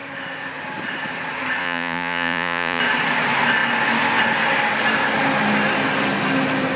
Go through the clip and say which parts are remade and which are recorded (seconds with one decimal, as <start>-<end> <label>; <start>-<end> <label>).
0.0-1.6 recorded; 1.6-2.8 remade; 2.8-6.8 recorded